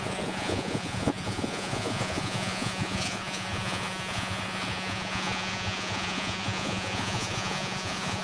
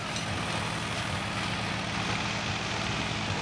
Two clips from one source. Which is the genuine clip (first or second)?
second